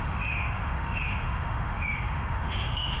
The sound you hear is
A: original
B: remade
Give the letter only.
B